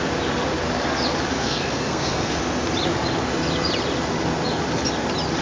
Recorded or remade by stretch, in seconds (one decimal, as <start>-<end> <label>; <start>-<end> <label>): 0.0-1.3 recorded; 1.3-2.4 remade; 2.4-5.4 recorded